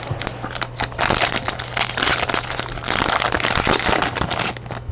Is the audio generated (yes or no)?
no